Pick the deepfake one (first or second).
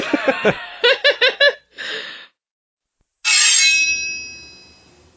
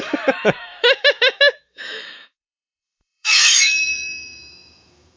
second